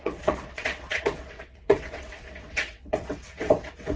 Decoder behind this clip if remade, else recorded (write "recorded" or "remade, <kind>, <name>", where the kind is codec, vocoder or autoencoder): remade, vocoder, WaveNeXt